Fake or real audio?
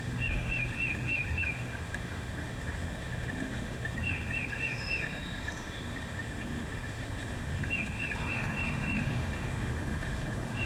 fake